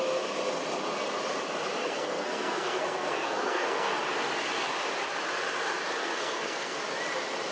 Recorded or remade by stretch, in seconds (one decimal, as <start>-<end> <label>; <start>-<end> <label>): 0.0-1.8 recorded; 1.8-4.0 remade; 4.0-6.0 recorded; 6.0-6.8 remade; 6.8-7.5 recorded